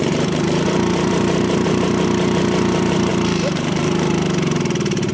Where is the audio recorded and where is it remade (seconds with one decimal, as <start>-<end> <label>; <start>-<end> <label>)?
0.0-5.1 remade